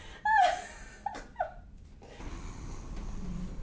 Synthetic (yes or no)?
no